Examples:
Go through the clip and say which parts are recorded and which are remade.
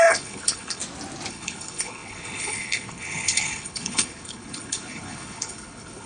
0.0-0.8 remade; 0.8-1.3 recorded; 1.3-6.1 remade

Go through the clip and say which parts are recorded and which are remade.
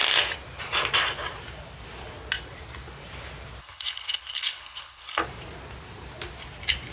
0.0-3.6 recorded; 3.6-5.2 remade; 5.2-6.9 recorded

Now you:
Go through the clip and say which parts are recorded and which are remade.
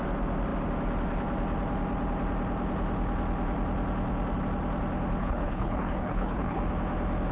0.0-5.2 recorded; 5.2-6.6 remade; 6.6-7.3 recorded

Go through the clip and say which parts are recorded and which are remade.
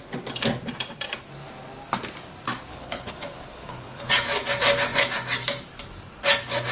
0.0-2.7 recorded; 2.7-4.1 remade; 4.1-6.7 recorded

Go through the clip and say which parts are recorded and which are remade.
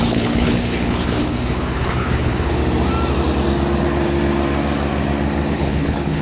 0.0-2.6 remade; 2.6-5.5 recorded; 5.5-6.2 remade